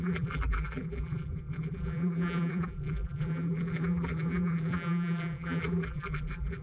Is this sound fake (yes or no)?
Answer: yes